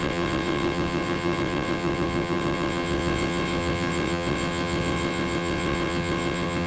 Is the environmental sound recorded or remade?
remade